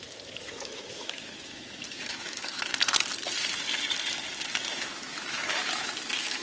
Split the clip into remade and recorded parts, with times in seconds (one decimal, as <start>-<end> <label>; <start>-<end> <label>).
0.0-2.7 remade; 2.7-4.7 recorded; 4.7-6.4 remade